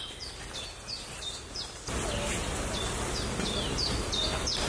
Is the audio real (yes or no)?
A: yes